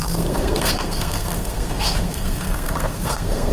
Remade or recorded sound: remade